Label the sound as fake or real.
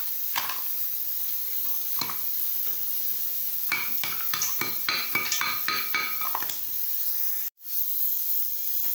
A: real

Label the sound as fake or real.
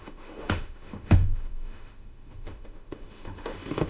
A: fake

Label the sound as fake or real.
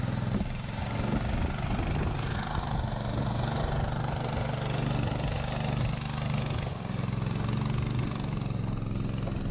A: real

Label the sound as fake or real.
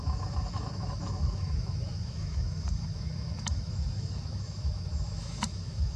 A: fake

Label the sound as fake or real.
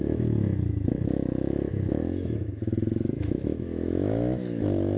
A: fake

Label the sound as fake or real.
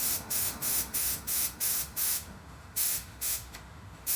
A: fake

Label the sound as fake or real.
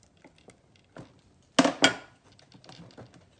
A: real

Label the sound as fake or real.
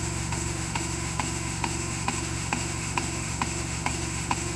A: fake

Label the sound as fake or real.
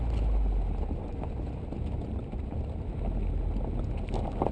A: real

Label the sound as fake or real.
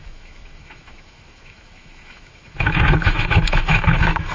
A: fake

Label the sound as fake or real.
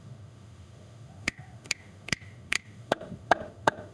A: fake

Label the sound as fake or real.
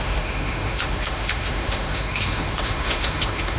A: fake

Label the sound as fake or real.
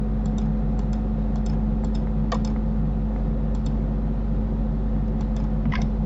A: real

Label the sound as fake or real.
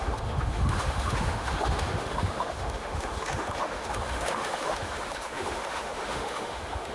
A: fake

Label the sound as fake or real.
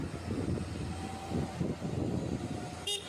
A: real